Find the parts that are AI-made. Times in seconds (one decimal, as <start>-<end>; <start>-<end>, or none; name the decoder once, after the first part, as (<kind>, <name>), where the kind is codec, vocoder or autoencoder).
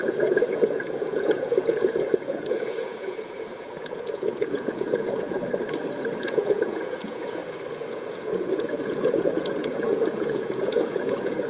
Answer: 0.0-5.4 (vocoder, Vocos); 6.2-7.4; 7.9-11.5